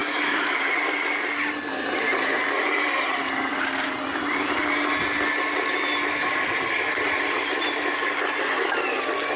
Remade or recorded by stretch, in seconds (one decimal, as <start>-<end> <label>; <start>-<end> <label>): 0.0-0.6 remade; 0.6-9.4 recorded